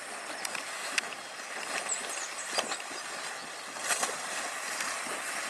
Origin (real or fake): real